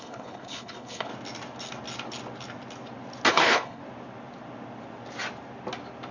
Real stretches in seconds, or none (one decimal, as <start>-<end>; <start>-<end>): 1.1-3.3; 3.8-6.1